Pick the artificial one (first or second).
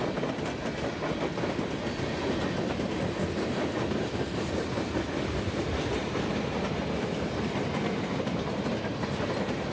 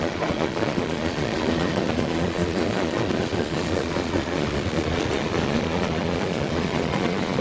second